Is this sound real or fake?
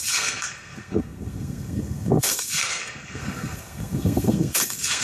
fake